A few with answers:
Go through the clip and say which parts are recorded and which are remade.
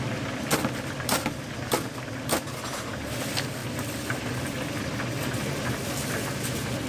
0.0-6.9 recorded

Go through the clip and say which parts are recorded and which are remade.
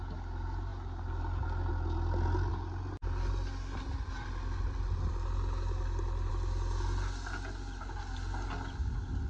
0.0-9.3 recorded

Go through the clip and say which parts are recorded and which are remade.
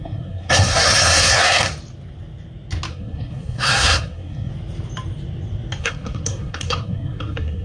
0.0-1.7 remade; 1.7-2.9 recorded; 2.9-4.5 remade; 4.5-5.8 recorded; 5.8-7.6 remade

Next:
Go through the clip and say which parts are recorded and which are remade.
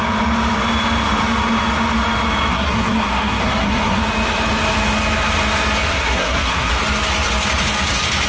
0.0-2.5 recorded; 2.5-4.0 remade; 4.0-5.9 recorded; 5.9-6.7 remade; 6.7-8.3 recorded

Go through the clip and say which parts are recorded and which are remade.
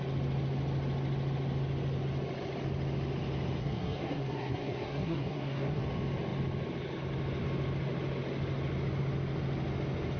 0.0-3.6 recorded; 3.6-5.8 remade; 5.8-10.2 recorded